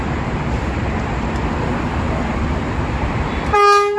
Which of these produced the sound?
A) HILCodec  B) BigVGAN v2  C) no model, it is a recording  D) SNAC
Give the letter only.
C